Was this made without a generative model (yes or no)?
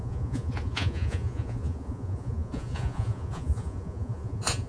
no